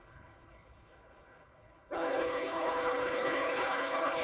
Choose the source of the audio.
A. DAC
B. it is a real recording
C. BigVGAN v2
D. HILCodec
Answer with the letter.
D